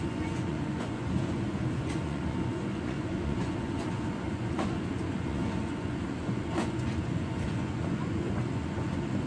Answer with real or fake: fake